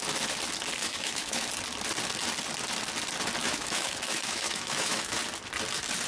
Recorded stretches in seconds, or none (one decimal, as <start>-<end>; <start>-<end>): 0.0-0.8; 1.5-3.4; 5.2-6.1